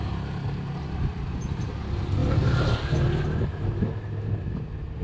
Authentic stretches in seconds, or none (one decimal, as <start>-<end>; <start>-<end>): 0.0-2.2; 2.7-5.0